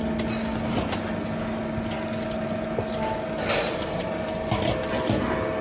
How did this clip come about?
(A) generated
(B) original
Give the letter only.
B